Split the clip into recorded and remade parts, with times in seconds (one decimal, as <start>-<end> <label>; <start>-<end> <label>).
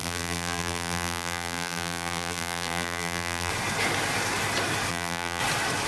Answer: 0.0-3.5 remade; 3.5-4.9 recorded; 4.9-5.4 remade; 5.4-5.9 recorded